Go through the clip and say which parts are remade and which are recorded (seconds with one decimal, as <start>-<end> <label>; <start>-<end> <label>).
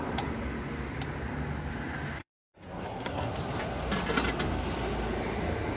0.0-2.2 recorded; 2.2-3.3 remade; 3.3-5.8 recorded